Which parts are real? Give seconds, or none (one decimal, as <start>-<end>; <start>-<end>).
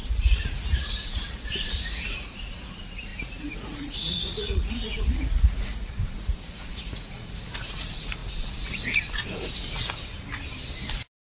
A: 9.2-11.3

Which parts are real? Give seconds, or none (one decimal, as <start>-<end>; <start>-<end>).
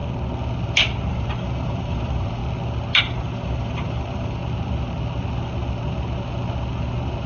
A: 0.0-1.1; 2.4-3.0; 4.4-7.3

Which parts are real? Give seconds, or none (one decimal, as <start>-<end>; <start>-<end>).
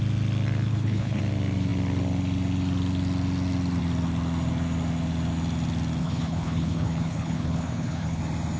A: 0.0-0.7; 1.2-6.0; 8.2-8.6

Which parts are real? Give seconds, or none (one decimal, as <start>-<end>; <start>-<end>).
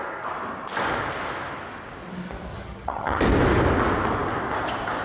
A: 0.0-2.5; 3.2-5.0